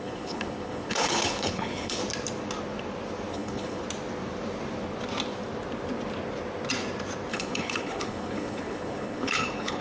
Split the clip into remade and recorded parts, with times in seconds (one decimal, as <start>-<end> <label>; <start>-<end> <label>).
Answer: 0.0-2.0 remade; 2.0-3.3 recorded; 3.3-3.8 remade; 3.8-7.3 recorded; 7.3-9.8 remade